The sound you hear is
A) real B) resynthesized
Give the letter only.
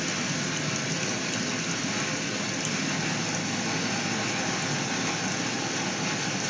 A